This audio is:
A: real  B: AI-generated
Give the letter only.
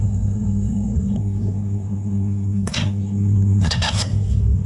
B